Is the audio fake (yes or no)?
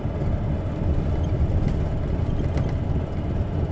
no